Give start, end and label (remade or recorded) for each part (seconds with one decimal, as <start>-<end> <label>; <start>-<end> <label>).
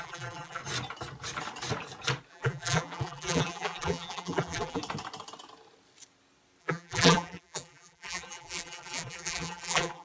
0.0-0.6 remade; 0.6-2.3 recorded; 2.3-4.8 remade; 4.8-6.6 recorded; 6.6-10.0 remade